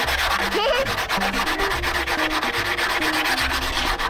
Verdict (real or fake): real